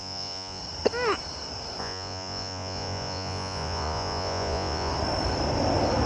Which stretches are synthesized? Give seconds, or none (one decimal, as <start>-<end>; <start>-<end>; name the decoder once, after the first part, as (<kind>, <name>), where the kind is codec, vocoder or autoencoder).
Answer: 0.0-0.6 (vocoder, Vocos); 1.8-4.9